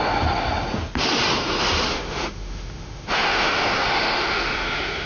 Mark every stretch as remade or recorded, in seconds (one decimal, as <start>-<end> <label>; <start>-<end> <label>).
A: 0.0-1.9 recorded; 1.9-5.1 remade